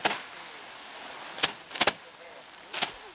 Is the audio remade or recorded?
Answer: recorded